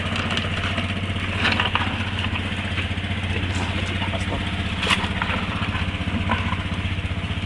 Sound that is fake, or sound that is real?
real